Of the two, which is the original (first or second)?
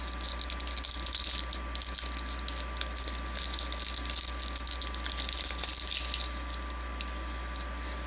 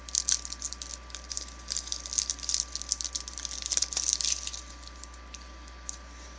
first